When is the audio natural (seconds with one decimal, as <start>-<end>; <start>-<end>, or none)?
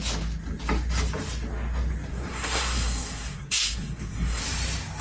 0.0-2.1; 4.4-5.0